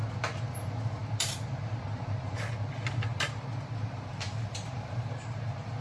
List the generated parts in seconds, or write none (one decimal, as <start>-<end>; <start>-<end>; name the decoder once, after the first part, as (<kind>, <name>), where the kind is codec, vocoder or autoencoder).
3.1-5.1 (vocoder, BigVGAN v2)